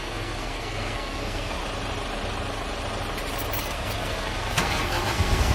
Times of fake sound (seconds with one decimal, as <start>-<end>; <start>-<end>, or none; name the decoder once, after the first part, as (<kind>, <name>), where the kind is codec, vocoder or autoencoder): 0.0-1.6 (codec, SNAC); 3.6-5.5

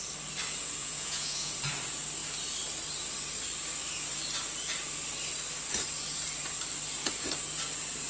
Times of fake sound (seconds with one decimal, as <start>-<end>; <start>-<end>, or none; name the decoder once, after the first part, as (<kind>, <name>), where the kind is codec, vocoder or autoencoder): 0.8-1.5 (vocoder, Vocos)

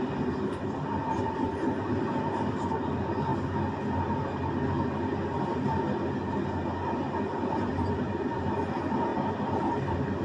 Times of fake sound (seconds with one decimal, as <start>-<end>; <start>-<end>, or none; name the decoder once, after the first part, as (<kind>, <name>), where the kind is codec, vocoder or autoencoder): none

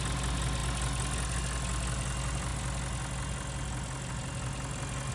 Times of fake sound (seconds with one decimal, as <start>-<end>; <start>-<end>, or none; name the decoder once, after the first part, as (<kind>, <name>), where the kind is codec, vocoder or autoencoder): none

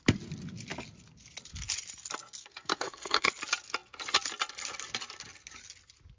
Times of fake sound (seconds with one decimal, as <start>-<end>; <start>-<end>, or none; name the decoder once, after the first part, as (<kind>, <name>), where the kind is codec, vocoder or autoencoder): 2.4-3.3 (codec, SNAC)

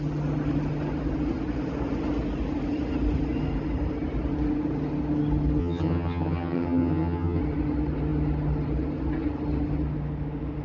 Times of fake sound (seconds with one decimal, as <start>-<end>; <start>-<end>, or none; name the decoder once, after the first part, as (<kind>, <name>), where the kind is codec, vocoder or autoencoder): 5.6-7.4 (vocoder, HiFi-GAN)

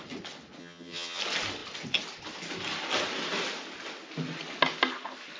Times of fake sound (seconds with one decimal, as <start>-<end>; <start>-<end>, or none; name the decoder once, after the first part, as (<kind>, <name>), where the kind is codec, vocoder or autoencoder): 0.6-1.2 (vocoder, HiFi-GAN)

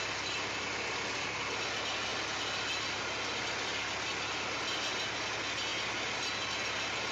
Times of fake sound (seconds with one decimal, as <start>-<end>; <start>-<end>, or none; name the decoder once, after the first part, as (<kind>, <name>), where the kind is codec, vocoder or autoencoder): none